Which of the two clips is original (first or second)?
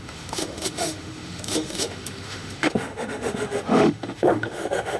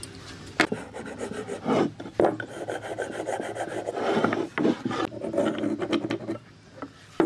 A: second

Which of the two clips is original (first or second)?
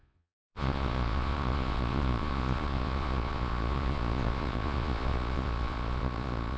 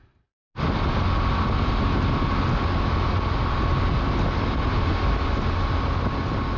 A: second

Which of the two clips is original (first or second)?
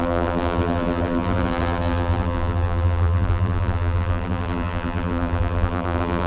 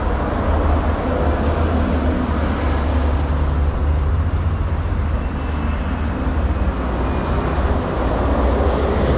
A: second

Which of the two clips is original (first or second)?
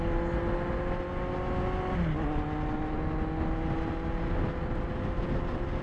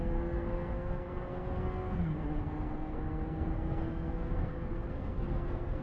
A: first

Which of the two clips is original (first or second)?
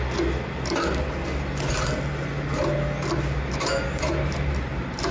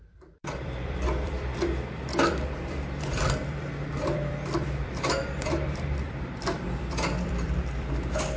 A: first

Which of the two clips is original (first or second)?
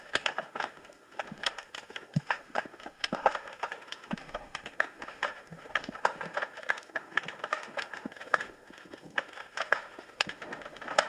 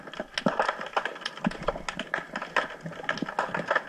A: second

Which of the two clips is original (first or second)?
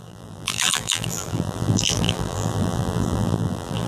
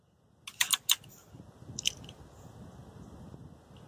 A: second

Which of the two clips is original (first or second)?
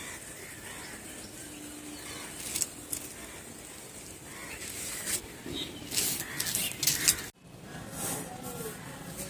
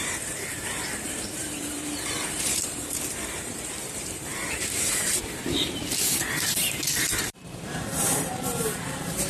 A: first